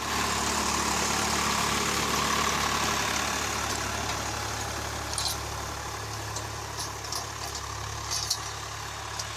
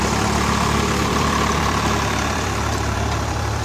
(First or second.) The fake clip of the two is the second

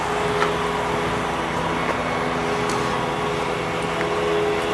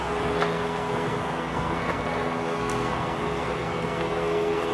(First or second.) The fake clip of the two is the second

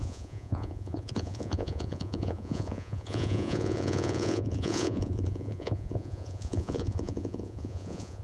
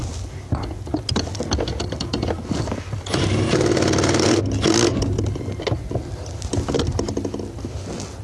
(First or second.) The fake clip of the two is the first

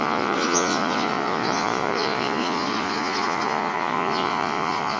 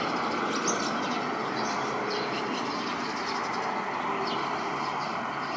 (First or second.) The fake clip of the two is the first